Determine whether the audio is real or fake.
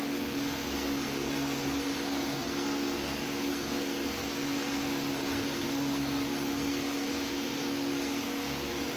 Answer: fake